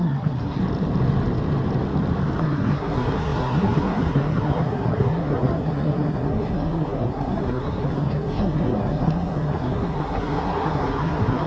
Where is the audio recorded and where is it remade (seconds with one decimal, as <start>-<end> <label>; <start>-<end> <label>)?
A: 0.0-0.6 remade; 0.6-2.4 recorded; 2.4-11.5 remade